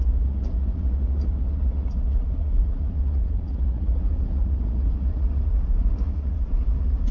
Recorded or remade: remade